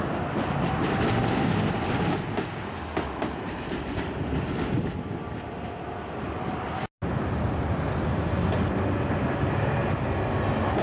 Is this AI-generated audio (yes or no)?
no